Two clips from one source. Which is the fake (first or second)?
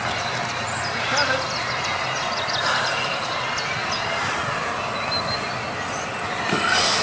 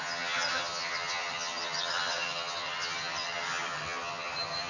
second